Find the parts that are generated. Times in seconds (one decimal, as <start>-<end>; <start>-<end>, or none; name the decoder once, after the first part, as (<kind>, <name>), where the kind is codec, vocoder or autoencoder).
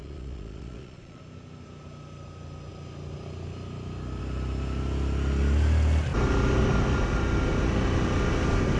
0.0-1.2 (vocoder, Vocos)